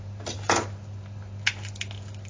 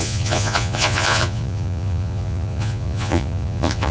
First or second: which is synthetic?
second